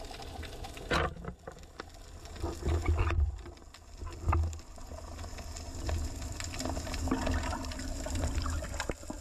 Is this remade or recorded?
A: recorded